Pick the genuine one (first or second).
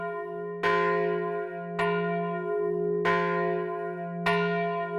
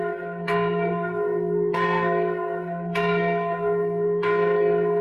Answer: first